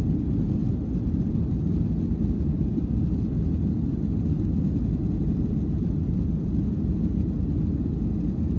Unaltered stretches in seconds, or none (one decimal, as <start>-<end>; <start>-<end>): 0.0-8.6